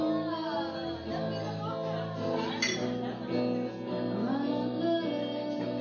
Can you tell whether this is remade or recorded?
recorded